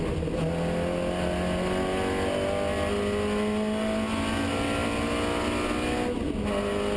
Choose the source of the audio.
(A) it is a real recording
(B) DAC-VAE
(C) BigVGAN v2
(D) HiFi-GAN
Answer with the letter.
A